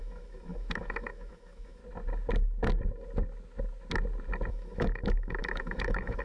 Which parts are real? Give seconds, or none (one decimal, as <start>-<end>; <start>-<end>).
1.8-4.5